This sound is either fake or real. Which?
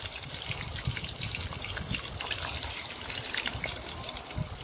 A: real